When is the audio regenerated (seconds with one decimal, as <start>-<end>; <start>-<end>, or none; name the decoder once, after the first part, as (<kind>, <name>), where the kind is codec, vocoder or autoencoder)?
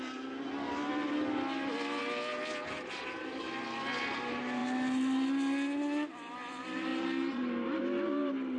none